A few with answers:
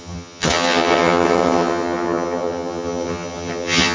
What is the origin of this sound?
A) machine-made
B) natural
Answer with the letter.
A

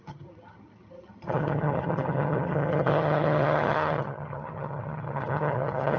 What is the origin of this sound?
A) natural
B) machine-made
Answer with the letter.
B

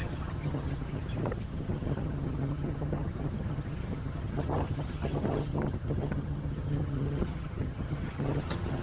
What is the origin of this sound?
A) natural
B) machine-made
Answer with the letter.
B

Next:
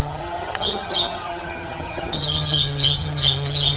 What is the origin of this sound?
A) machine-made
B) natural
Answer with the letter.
A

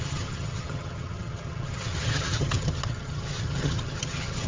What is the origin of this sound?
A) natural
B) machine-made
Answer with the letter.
B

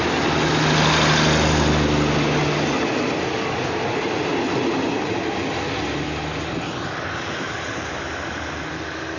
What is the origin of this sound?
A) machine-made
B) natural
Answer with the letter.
B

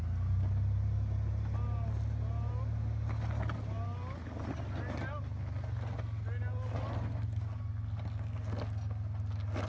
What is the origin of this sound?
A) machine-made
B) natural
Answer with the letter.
B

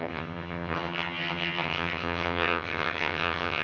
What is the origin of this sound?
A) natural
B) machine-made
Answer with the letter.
B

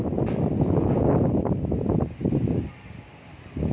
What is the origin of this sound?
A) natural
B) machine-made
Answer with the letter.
A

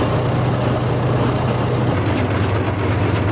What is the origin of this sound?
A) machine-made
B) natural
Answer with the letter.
B